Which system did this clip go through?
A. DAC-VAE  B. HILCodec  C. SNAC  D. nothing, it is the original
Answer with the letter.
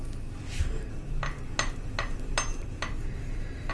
D